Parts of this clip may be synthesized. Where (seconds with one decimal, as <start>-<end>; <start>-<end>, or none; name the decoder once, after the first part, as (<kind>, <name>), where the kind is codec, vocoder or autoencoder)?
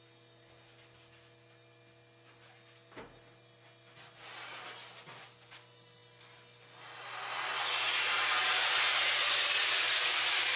none